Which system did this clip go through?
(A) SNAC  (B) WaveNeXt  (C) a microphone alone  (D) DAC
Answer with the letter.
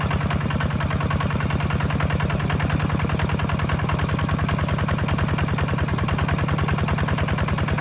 C